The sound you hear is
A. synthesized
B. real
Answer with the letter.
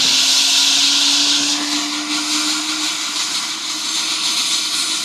B